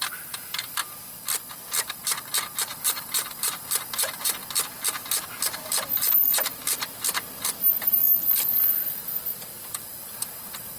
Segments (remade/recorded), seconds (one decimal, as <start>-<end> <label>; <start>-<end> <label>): 0.0-0.8 remade; 0.8-2.8 recorded; 2.8-4.4 remade; 4.4-8.4 recorded; 8.4-10.8 remade